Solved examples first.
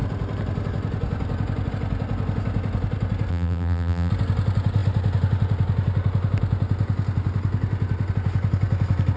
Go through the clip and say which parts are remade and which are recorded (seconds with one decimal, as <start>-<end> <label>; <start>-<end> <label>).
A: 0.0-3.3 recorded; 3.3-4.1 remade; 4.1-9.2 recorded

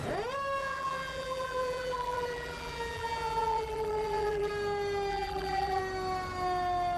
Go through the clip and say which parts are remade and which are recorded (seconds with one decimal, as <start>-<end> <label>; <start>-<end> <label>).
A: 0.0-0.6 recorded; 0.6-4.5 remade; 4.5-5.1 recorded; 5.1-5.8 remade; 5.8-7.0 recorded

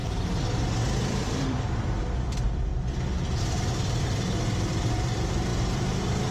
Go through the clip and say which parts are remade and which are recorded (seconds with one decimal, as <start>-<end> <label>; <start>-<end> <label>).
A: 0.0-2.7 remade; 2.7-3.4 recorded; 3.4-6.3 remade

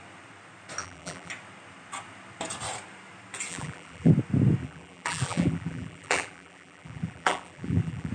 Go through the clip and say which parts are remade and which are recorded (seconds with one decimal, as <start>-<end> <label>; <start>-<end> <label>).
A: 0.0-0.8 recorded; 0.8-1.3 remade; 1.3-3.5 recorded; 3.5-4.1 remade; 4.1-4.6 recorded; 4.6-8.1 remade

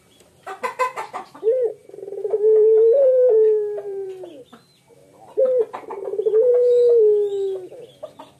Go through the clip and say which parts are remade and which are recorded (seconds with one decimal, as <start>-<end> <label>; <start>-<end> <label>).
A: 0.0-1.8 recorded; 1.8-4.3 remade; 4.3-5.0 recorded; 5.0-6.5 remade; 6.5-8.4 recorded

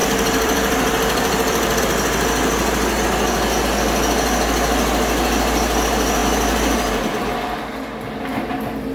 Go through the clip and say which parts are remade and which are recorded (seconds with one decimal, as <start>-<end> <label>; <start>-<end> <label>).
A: 0.0-1.8 remade; 1.8-8.9 recorded

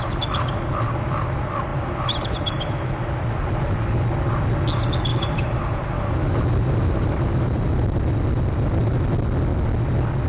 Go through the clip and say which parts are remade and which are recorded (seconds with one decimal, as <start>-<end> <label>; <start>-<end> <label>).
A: 0.0-1.7 recorded; 1.7-2.8 remade; 2.8-5.1 recorded; 5.1-8.0 remade; 8.0-10.3 recorded

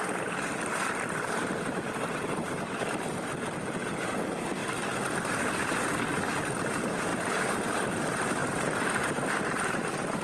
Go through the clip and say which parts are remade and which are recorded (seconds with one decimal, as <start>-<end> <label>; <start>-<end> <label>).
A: 0.0-7.1 remade; 7.1-8.0 recorded; 8.0-10.2 remade